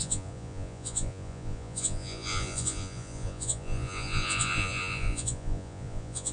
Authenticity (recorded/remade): remade